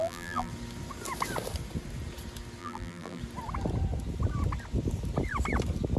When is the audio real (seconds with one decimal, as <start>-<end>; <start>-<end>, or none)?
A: 0.5-2.6; 3.2-6.0